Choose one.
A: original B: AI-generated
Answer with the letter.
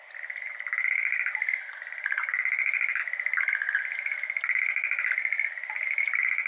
A